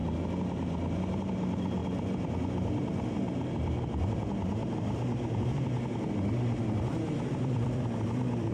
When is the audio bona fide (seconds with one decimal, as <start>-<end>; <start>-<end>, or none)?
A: 0.0-1.2